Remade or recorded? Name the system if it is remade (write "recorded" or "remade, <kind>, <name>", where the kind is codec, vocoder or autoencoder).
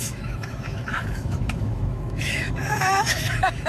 remade, autoencoder, DAC-VAE